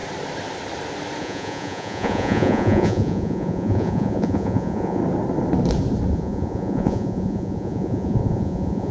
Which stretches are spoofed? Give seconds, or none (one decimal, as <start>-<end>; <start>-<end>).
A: 1.2-5.0; 6.1-8.9